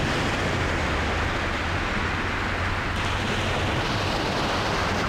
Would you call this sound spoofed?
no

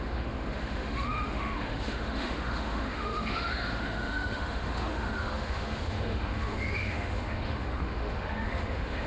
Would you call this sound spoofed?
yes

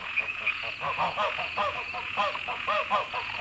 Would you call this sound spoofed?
yes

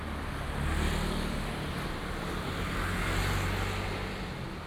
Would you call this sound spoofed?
no